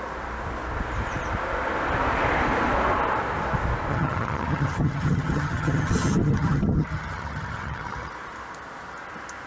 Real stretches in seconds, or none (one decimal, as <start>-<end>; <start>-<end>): 0.0-3.9; 8.1-9.5